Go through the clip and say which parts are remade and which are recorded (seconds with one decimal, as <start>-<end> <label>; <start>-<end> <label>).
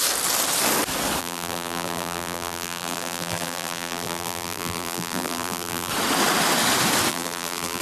0.0-1.2 recorded; 1.2-5.9 remade; 5.9-7.1 recorded; 7.1-7.8 remade